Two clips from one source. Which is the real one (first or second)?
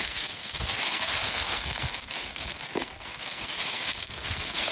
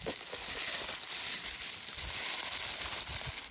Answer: second